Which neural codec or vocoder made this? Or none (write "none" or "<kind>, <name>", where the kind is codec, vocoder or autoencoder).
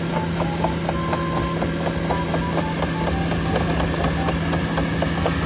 none